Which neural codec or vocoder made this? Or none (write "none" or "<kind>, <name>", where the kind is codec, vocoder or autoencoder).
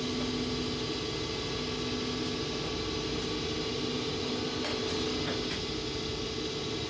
none